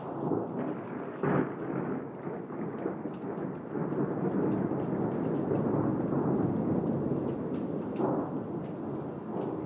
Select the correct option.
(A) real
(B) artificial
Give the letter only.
A